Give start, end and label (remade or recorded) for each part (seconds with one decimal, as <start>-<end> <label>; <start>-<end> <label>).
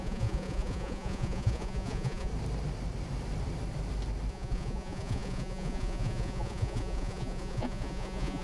0.0-2.3 remade; 2.3-4.3 recorded; 4.3-8.4 remade